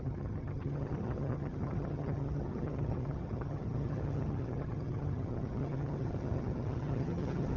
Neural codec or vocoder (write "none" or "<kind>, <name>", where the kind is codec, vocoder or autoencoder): vocoder, HiFi-GAN